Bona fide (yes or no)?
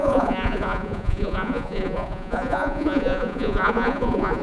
no